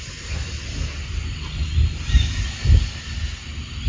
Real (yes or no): yes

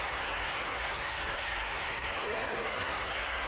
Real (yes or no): no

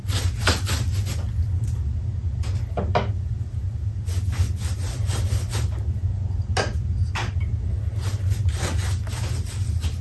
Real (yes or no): yes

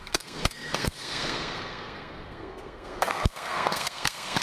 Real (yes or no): no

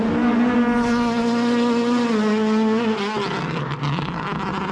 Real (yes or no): yes